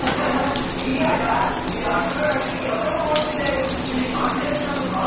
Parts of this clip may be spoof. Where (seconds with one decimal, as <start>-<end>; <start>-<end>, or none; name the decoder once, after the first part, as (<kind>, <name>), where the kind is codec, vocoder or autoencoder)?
none